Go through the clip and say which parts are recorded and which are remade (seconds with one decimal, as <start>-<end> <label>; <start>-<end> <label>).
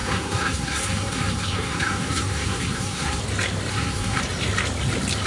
0.0-3.2 remade; 3.2-3.7 recorded; 3.7-4.2 remade; 4.2-5.3 recorded